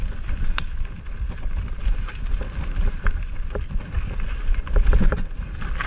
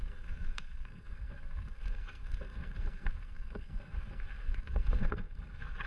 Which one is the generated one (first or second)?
second